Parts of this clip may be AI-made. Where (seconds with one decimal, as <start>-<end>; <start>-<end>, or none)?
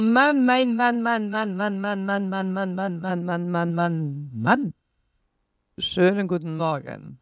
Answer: 0.0-3.1; 3.7-5.2; 6.6-7.2